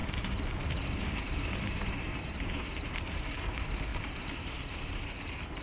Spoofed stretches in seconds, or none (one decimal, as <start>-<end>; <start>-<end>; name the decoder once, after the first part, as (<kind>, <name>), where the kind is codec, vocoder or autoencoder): 0.0-3.4 (vocoder, BigVGAN v2); 3.9-4.6